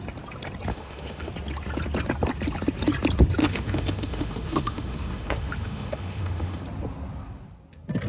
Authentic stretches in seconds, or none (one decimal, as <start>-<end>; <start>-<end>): 0.0-0.7; 1.3-3.4; 6.6-8.1